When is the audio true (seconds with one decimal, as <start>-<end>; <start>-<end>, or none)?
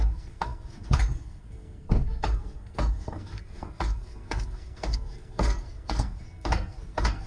none